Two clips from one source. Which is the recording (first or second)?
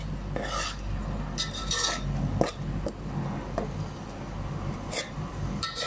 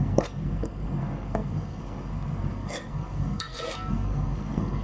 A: first